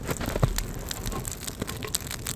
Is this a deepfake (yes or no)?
no